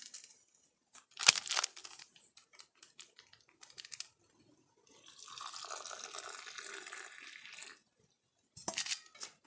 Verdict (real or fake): real